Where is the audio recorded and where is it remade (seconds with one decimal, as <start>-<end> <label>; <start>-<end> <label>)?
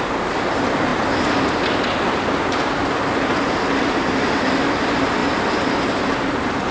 0.0-6.7 recorded